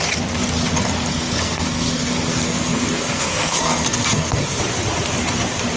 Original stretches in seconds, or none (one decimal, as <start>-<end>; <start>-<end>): 0.0-1.1; 4.6-5.8